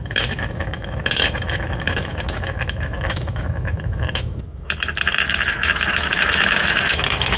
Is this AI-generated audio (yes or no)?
yes